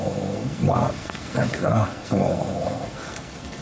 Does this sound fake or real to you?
fake